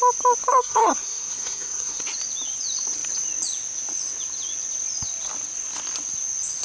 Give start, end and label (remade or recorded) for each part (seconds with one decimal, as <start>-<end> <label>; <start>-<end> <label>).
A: 0.0-0.5 recorded; 0.5-2.0 remade; 2.0-6.6 recorded